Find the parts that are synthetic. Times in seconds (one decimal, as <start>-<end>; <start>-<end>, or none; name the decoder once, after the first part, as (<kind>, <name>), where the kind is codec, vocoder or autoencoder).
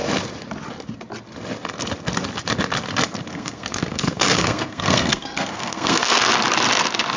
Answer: 3.3-6.2 (codec, SNAC)